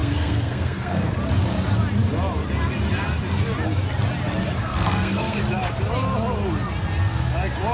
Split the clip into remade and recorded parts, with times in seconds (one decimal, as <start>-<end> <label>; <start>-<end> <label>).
0.0-1.1 remade; 1.1-4.6 recorded; 4.6-5.4 remade; 5.4-7.7 recorded